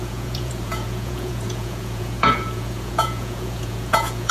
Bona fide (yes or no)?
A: no